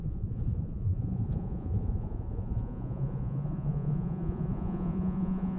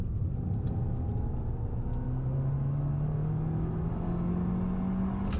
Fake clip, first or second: first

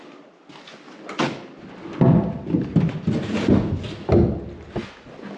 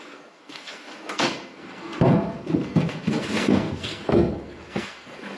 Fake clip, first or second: second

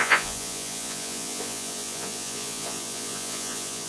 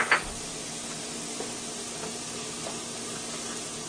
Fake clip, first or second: first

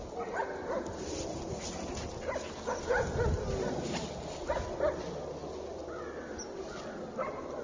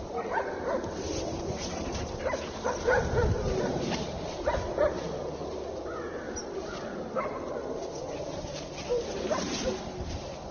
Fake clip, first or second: second